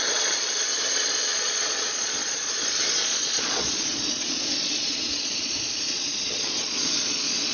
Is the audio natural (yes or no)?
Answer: no